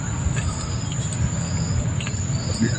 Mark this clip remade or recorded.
recorded